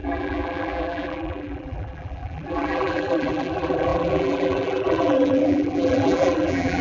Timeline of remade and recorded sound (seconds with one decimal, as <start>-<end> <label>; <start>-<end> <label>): 0.0-6.8 remade